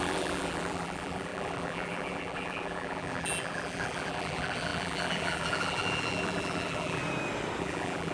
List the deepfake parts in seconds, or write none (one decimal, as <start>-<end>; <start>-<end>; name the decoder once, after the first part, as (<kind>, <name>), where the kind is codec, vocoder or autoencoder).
0.0-7.0 (vocoder, BigVGAN v2); 7.6-8.1